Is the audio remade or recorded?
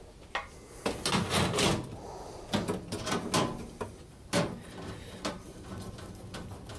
recorded